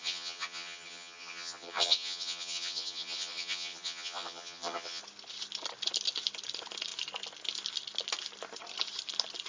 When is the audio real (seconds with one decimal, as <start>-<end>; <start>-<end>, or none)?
5.0-9.5